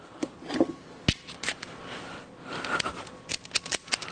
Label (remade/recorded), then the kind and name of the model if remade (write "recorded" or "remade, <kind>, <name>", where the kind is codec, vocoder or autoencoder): recorded